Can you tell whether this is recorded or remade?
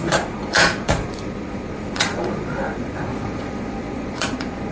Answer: remade